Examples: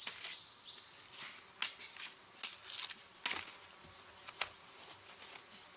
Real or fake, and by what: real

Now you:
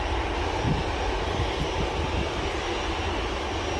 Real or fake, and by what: real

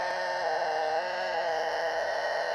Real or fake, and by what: fake, vocoder, BigVGAN v2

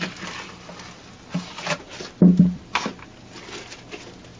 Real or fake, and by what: real